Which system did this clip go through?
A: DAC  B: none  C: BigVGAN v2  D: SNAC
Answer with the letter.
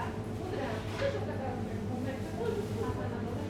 B